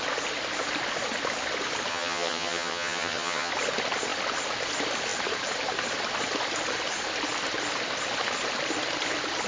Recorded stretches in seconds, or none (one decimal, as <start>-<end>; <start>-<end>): 0.0-1.9; 3.5-9.5